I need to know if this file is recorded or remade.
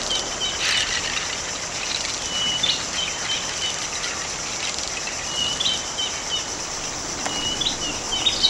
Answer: recorded